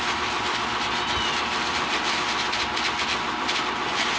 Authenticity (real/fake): real